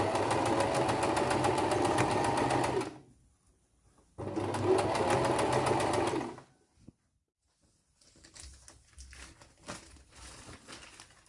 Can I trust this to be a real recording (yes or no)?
yes